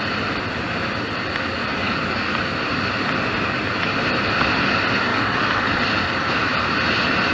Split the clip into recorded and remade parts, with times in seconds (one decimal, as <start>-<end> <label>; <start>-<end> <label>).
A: 0.0-1.7 recorded; 1.7-2.4 remade; 2.4-5.1 recorded; 5.1-5.7 remade; 5.7-7.3 recorded